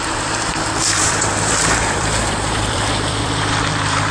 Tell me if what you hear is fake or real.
fake